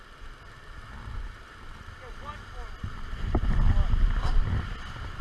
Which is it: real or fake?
real